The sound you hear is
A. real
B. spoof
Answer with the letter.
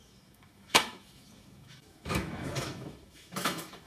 B